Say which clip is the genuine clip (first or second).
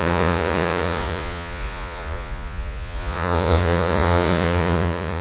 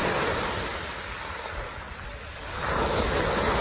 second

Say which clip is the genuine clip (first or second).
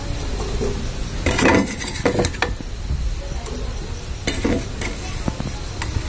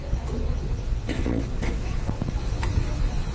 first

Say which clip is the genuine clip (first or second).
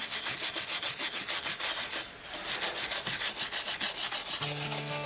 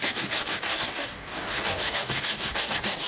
first